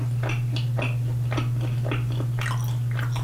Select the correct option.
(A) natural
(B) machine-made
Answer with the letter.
A